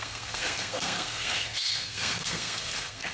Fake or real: fake